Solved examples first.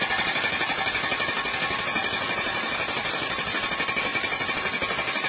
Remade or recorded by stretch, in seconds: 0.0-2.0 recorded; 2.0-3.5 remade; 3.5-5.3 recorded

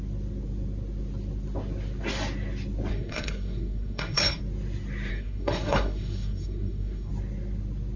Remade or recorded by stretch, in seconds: 0.0-2.9 recorded; 2.9-4.4 remade; 4.4-5.1 recorded; 5.1-7.1 remade; 7.1-8.0 recorded

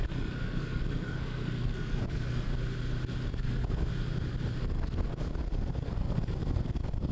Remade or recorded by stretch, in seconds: 0.0-2.5 remade; 2.5-3.3 recorded; 3.3-3.9 remade; 3.9-4.6 recorded; 4.6-7.1 remade

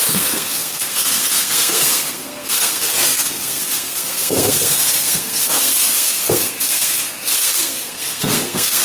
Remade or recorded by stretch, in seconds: 0.0-8.8 remade

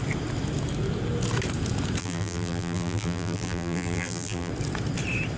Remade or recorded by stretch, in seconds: 0.0-2.0 recorded; 2.0-4.5 remade; 4.5-5.4 recorded

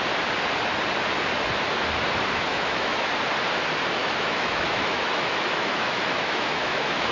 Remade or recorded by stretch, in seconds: 0.0-2.5 recorded; 2.5-3.1 remade; 3.1-4.0 recorded; 4.0-7.1 remade

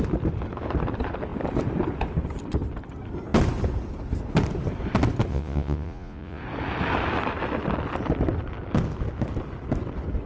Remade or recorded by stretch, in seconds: 0.0-5.3 recorded; 5.3-6.4 remade; 6.4-10.3 recorded